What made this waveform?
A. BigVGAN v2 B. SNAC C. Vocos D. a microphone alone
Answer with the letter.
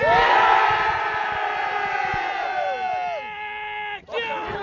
D